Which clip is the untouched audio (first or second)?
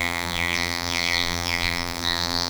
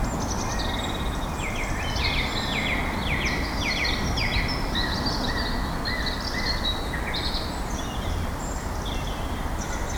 second